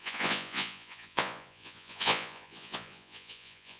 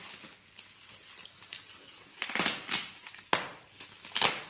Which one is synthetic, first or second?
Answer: first